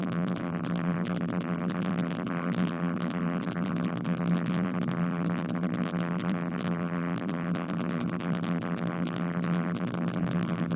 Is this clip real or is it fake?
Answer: fake